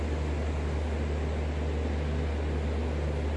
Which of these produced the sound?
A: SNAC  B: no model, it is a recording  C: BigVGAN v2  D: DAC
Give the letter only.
B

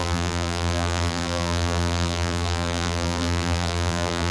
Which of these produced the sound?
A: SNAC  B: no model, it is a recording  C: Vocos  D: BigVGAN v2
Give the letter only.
D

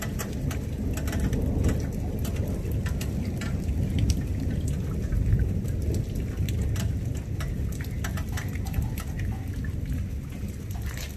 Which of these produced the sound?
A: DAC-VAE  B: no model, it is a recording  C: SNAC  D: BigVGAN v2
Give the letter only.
B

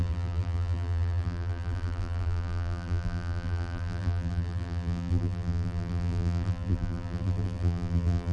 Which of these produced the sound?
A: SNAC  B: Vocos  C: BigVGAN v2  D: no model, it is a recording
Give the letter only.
C